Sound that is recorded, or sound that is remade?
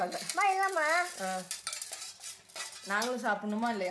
recorded